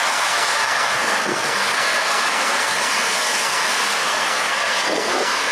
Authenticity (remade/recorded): remade